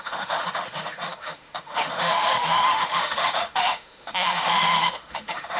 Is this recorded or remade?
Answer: remade